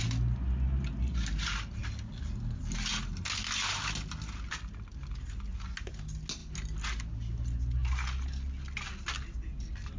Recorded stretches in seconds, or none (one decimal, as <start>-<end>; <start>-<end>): 0.0-10.0